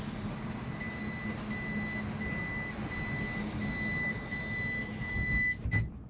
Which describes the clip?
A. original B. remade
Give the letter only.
A